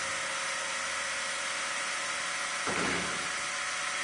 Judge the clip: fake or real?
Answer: real